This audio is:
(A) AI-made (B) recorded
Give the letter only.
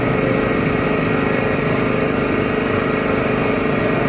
B